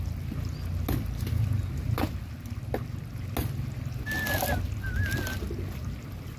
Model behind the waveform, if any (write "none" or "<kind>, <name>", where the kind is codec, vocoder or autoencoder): none